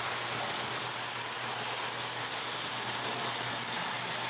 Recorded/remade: recorded